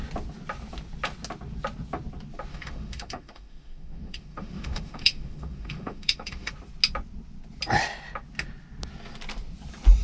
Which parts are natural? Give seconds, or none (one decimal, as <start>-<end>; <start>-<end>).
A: 0.0-2.5; 6.5-10.0